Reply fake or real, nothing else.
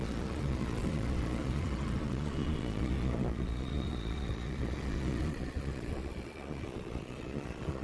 fake